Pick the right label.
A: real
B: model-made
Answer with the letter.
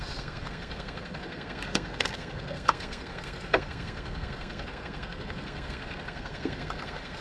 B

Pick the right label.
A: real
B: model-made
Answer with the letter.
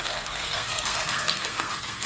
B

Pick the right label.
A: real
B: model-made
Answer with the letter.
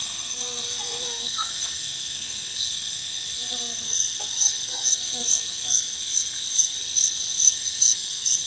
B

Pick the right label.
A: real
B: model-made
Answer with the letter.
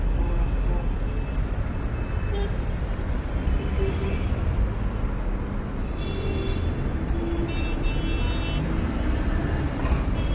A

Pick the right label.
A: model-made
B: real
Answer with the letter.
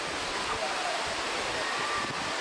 B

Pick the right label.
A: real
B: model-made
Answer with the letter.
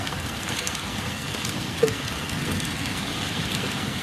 B